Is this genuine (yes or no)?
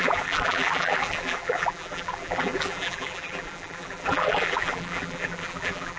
no